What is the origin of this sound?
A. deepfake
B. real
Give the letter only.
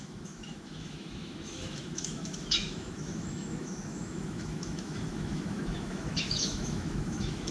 A